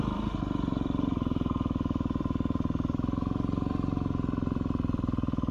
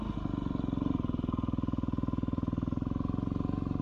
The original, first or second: second